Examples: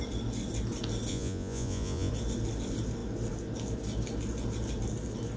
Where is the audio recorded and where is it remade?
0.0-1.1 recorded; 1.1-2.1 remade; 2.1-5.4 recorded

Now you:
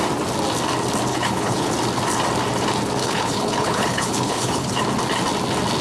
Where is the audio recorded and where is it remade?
0.0-1.1 recorded; 1.1-1.7 remade; 1.7-3.0 recorded; 3.0-4.8 remade; 4.8-5.8 recorded

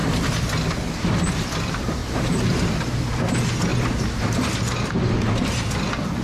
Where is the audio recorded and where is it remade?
0.0-6.2 recorded

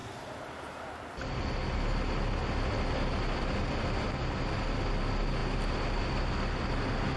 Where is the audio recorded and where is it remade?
0.0-7.2 recorded

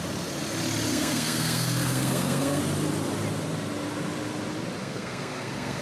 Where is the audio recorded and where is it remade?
0.0-0.9 recorded; 0.9-2.6 remade; 2.6-4.8 recorded; 4.8-5.8 remade